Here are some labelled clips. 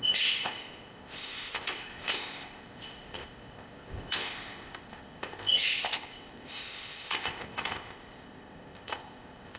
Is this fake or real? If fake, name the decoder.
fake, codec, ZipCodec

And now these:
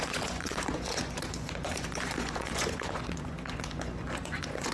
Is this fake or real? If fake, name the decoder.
fake, vocoder, Vocos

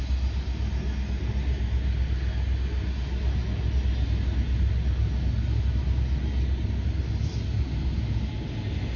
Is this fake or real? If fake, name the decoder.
real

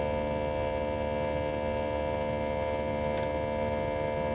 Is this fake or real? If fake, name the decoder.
real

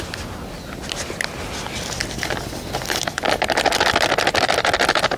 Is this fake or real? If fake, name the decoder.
real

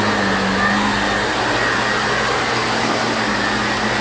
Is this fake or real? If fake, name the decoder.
real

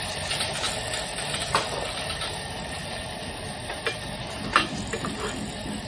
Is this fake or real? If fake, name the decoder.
real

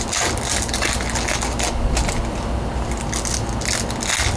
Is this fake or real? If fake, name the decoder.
real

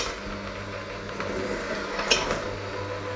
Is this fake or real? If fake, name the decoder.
real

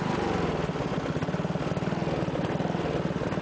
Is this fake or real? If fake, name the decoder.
real